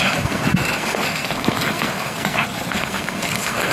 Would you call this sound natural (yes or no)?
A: no